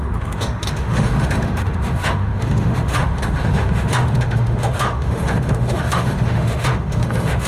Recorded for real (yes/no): no